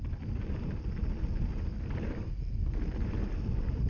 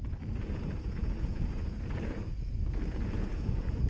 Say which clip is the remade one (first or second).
second